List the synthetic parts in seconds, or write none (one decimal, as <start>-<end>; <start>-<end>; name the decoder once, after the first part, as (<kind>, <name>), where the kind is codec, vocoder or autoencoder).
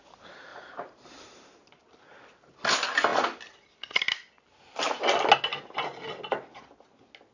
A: 0.5-1.8 (vocoder, BigVGAN v2)